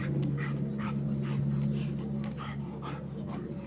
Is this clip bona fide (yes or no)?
yes